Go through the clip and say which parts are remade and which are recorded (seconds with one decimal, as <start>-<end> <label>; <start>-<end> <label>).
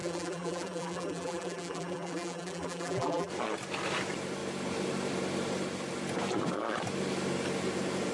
0.0-3.3 remade; 3.3-8.1 recorded